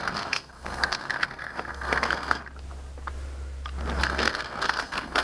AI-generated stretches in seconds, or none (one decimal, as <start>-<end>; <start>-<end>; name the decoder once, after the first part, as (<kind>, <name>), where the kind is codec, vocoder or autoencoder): 0.0-2.4 (codec, SNAC); 4.0-5.2